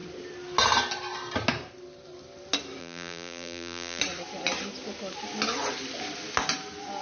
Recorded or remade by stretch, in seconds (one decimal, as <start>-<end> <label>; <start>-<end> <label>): 0.0-2.8 recorded; 2.8-4.0 remade; 4.0-7.0 recorded